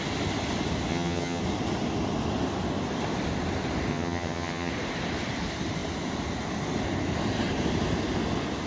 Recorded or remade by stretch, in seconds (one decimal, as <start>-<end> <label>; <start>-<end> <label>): 0.0-0.9 recorded; 0.9-1.4 remade; 1.4-3.9 recorded; 3.9-4.7 remade; 4.7-8.7 recorded